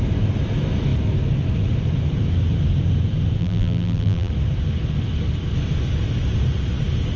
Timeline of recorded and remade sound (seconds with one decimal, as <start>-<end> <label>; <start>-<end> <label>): 0.0-3.4 recorded; 3.4-4.3 remade; 4.3-7.2 recorded

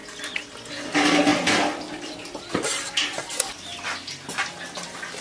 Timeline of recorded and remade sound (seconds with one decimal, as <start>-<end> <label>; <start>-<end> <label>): 0.0-5.2 recorded